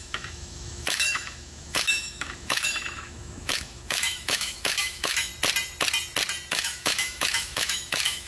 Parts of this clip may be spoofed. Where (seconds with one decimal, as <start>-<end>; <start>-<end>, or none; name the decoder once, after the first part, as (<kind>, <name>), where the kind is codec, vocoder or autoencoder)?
0.0-5.3 (autoencoder, DAC-VAE); 6.5-8.3